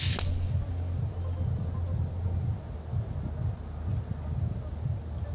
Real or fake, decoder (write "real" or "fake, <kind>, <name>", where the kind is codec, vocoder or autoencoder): real